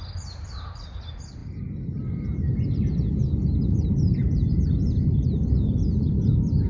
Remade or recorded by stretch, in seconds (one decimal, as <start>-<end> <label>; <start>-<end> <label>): 0.0-6.7 recorded